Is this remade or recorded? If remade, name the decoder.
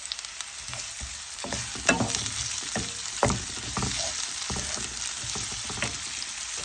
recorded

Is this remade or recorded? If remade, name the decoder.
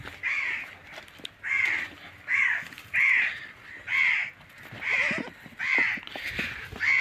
recorded